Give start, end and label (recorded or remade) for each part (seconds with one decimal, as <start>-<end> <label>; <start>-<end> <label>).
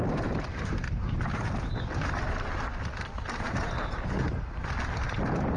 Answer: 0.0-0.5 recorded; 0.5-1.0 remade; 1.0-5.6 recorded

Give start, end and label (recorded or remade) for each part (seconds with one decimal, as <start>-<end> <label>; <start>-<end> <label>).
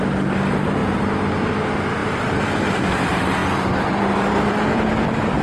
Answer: 0.0-0.8 recorded; 0.8-1.5 remade; 1.5-2.0 recorded; 2.0-2.8 remade; 2.8-3.4 recorded; 3.4-5.4 remade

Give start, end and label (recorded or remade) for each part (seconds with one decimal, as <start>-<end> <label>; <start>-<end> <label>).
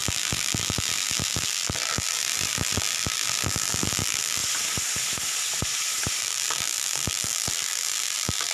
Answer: 0.0-4.4 remade; 4.4-6.2 recorded; 6.2-8.5 remade